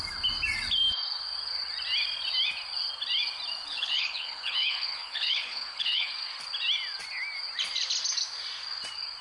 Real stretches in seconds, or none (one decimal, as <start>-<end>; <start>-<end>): 0.0-3.7; 6.1-9.2